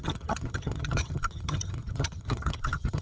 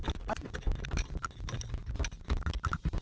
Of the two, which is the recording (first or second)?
second